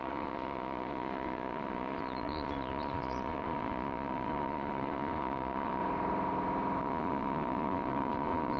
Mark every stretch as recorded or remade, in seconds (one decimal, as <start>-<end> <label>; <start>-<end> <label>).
0.0-5.8 remade; 5.8-6.8 recorded; 6.8-8.6 remade